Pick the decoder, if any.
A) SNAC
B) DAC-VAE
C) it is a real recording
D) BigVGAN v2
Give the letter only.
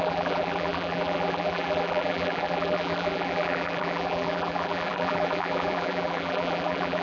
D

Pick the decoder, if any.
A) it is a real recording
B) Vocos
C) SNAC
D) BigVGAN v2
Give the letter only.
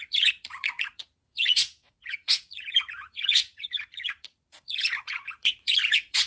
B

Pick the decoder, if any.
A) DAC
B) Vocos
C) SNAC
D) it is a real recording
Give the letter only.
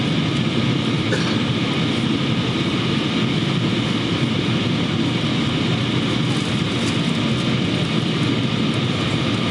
D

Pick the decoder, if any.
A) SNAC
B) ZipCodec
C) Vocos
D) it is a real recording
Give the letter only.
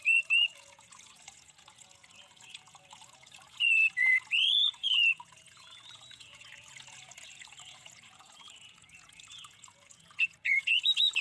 C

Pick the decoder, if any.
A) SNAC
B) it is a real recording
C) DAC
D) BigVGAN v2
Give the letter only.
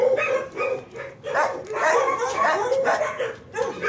B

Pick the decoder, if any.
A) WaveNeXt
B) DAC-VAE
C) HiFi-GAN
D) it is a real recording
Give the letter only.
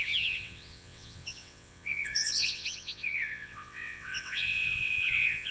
A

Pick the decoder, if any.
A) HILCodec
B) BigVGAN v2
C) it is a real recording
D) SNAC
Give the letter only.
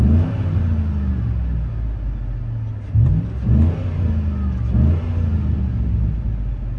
C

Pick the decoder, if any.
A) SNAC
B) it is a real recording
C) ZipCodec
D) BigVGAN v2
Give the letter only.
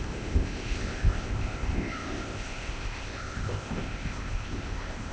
C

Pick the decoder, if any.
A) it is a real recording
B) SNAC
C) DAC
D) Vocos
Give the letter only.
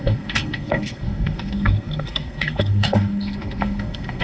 B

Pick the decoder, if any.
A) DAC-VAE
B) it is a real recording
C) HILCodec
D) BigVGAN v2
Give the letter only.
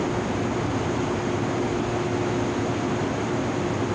B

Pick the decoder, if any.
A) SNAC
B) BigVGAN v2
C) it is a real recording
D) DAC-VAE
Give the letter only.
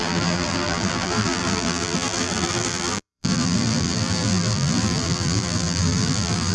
B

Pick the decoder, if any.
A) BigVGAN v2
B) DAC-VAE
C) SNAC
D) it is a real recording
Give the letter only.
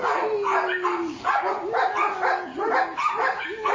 D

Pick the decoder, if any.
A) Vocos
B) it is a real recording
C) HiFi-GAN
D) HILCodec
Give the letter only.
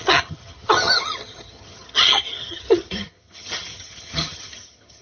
C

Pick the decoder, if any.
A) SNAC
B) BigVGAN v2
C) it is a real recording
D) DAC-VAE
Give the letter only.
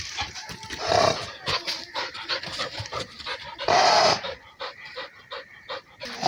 B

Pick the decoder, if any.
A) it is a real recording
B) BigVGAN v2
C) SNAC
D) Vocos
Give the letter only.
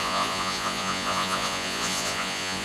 D